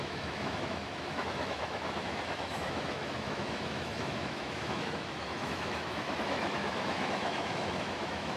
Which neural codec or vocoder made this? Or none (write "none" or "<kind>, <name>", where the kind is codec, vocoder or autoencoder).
autoencoder, DAC-VAE